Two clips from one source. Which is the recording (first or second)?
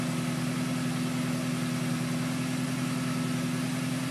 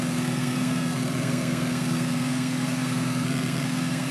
first